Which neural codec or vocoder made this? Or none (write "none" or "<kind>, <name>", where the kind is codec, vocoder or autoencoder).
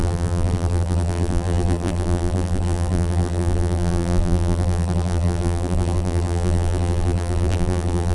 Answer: vocoder, BigVGAN v2